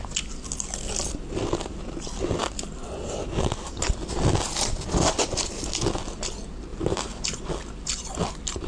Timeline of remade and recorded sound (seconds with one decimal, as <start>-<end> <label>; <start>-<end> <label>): 0.0-6.7 recorded; 6.7-7.5 remade; 7.5-8.7 recorded